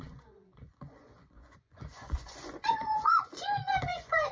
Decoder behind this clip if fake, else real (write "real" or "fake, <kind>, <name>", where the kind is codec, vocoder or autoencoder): fake, vocoder, Vocos